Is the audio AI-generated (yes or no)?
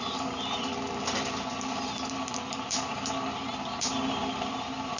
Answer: yes